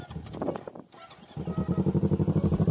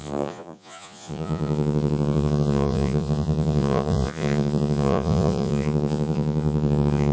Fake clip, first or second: second